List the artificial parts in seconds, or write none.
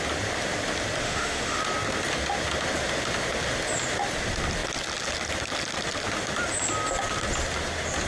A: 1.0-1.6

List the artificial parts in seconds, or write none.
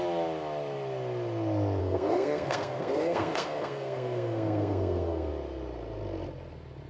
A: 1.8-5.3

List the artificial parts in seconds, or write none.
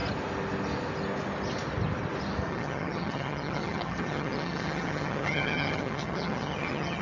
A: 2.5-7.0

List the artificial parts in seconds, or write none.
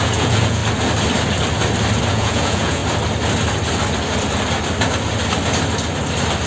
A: 0.0-0.6; 2.1-2.8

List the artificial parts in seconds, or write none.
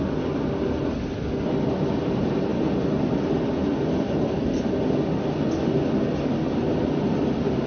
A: none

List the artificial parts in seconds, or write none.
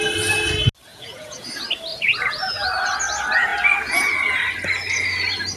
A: 0.9-1.5; 1.9-2.7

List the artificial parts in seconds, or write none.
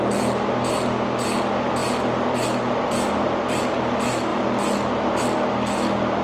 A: none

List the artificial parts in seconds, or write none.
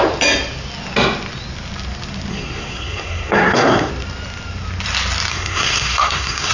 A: 2.3-3.9; 5.3-6.5